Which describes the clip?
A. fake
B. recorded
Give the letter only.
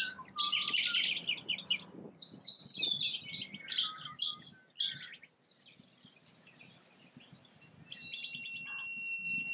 B